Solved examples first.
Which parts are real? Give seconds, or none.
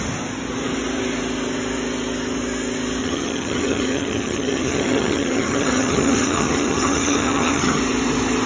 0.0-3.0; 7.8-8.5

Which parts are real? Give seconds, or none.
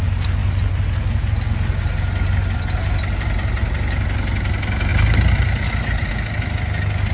0.0-4.9; 6.1-7.1